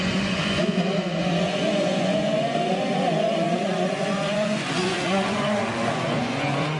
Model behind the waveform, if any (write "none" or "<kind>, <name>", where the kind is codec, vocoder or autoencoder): vocoder, Vocos